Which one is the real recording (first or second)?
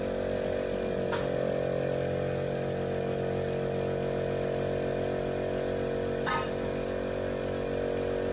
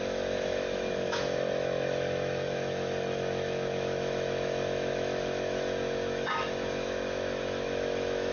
first